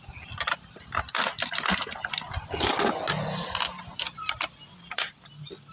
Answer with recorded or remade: recorded